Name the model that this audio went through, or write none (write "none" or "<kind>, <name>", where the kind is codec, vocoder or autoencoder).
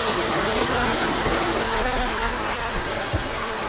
codec, SNAC